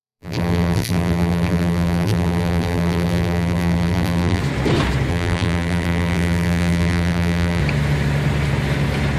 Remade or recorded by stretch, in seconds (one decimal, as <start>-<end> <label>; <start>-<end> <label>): 0.0-4.4 remade; 4.4-5.1 recorded; 5.1-7.6 remade; 7.6-9.2 recorded